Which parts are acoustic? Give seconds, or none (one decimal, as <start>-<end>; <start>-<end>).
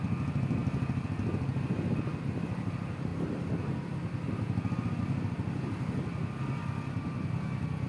0.0-7.9